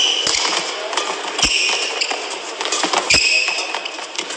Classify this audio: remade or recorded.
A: recorded